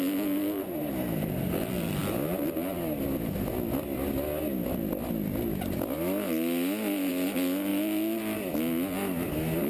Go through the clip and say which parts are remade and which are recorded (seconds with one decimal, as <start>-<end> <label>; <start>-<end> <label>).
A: 0.0-9.7 recorded